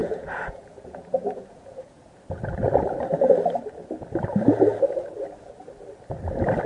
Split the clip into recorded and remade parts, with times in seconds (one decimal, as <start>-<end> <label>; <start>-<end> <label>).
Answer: 0.0-2.2 remade; 2.2-6.7 recorded